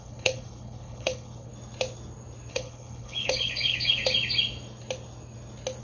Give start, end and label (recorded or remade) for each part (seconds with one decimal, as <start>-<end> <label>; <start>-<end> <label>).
0.0-1.5 remade; 1.5-2.5 recorded; 2.5-4.0 remade; 4.0-5.8 recorded